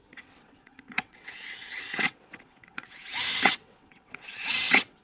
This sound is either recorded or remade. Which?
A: remade